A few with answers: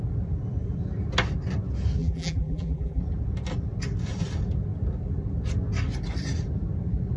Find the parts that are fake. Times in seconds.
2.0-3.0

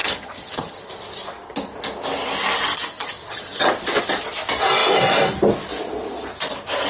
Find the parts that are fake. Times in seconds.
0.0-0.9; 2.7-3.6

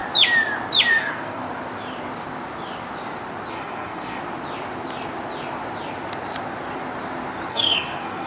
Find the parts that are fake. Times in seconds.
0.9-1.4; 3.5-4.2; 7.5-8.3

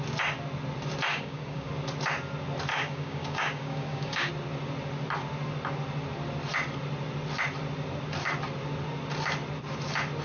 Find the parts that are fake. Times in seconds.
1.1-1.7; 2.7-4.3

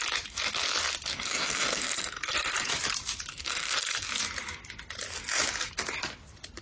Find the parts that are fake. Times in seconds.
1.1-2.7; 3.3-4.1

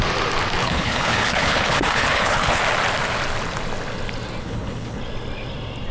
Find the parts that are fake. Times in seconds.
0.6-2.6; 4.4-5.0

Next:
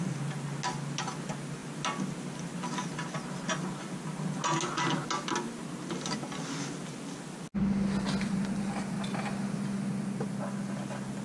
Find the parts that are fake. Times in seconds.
none